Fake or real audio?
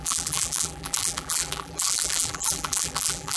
fake